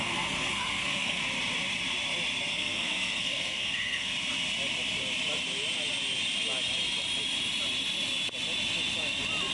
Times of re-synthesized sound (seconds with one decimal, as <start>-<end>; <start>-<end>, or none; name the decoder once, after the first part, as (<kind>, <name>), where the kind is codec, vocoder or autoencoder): 0.0-1.2 (codec, SNAC); 2.5-4.1